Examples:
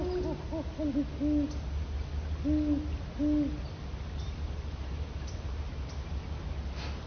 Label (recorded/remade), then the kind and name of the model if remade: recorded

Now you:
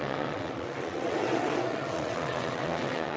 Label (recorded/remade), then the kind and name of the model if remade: remade, vocoder, WaveNeXt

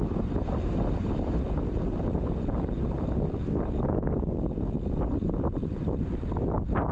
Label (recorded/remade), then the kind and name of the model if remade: recorded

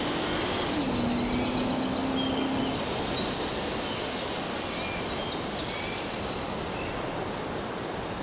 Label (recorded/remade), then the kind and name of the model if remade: recorded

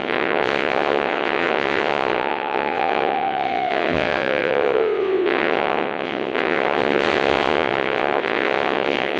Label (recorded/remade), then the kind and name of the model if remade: remade, vocoder, WaveNeXt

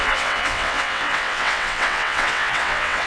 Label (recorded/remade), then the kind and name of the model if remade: remade, vocoder, WaveNeXt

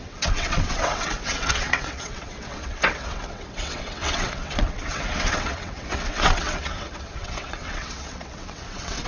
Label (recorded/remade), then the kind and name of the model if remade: remade, vocoder, WaveNeXt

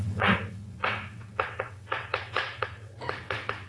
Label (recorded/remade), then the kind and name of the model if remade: remade, vocoder, WaveNeXt